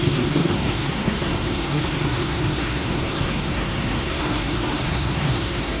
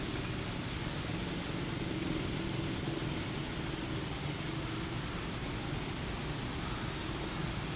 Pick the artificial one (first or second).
first